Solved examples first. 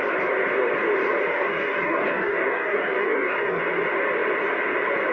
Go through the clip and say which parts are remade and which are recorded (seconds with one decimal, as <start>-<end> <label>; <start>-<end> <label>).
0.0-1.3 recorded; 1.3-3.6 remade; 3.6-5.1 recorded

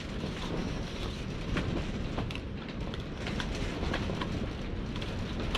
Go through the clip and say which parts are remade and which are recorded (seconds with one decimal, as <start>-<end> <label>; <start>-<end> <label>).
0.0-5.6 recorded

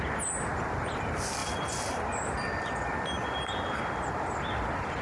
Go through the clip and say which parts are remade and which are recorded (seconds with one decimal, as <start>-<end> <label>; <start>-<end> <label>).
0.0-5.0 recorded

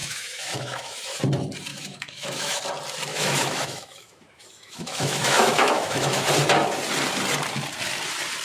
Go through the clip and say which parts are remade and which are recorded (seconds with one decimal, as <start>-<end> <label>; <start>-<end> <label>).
0.0-1.2 remade; 1.2-1.7 recorded; 1.7-2.6 remade; 2.6-3.1 recorded; 3.1-6.3 remade; 6.3-8.4 recorded